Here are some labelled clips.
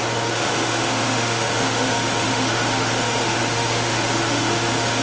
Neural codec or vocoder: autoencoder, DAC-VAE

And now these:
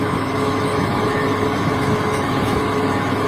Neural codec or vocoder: autoencoder, DAC-VAE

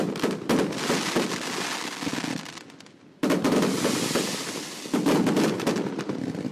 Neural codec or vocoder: none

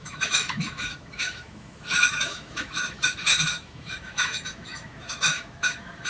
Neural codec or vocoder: autoencoder, DAC-VAE